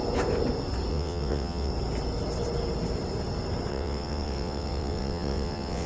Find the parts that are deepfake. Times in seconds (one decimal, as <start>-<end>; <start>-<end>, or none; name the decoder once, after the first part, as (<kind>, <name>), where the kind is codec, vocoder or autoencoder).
0.9-1.7 (vocoder, WaveNeXt); 3.7-5.9